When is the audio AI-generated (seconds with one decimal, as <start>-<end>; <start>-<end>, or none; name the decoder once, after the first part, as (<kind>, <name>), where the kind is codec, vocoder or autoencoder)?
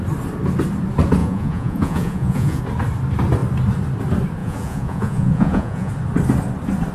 1.2-2.6 (vocoder, Vocos); 4.4-5.9